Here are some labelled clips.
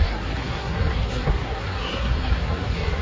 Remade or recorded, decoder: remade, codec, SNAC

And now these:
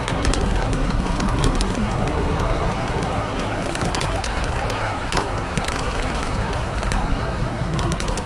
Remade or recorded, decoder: remade, codec, SNAC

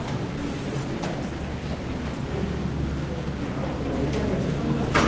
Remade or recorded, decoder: recorded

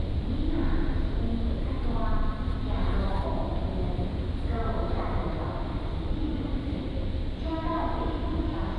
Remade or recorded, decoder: recorded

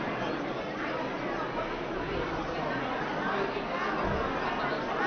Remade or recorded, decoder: recorded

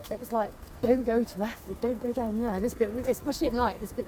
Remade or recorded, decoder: remade, codec, SNAC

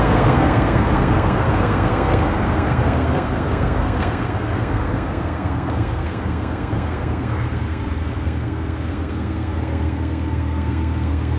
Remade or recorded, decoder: remade, codec, SNAC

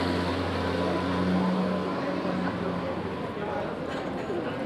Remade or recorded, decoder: recorded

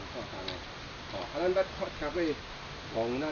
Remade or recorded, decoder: recorded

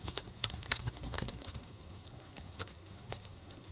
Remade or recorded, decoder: remade, codec, SNAC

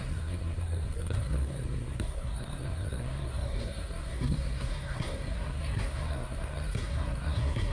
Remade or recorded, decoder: remade, codec, SNAC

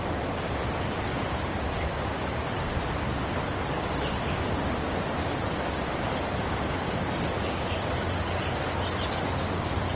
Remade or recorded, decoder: recorded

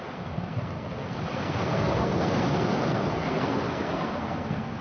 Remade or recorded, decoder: remade, codec, SNAC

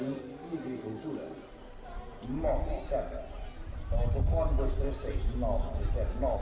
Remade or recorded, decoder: recorded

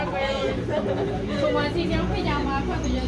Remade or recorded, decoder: recorded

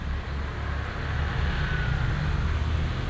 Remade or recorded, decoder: recorded